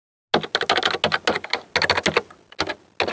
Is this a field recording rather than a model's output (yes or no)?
yes